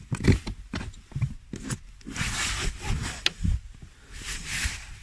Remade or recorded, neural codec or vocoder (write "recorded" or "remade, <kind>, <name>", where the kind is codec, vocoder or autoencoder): recorded